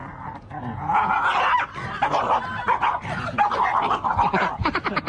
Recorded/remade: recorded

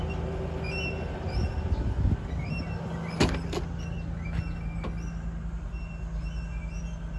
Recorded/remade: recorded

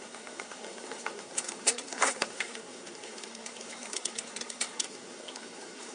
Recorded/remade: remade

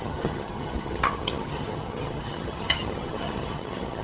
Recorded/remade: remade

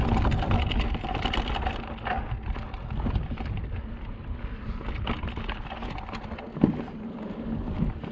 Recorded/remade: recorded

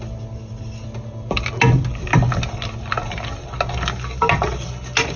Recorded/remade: recorded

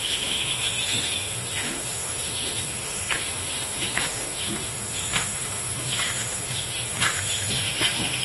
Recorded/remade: remade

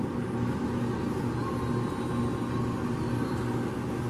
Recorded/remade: recorded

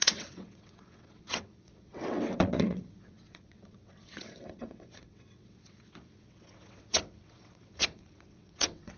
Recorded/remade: remade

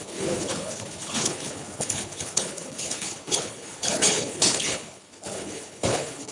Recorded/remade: remade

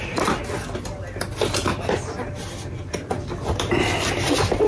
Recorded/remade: recorded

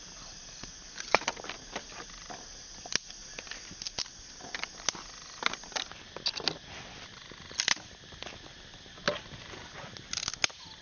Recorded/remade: recorded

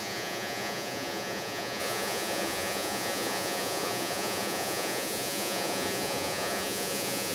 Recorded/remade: remade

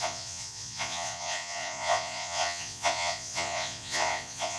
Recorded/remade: remade